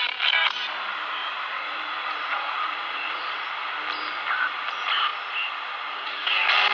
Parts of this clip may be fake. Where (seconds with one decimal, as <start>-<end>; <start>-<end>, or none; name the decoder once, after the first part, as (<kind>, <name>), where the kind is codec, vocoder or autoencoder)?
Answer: 1.2-3.5 (vocoder, Vocos)